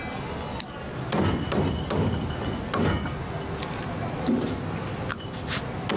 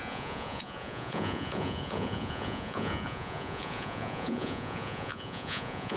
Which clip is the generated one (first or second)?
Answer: second